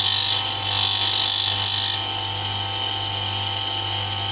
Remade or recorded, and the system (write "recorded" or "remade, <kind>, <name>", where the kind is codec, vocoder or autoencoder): recorded